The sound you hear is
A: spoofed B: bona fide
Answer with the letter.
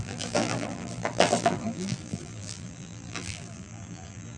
A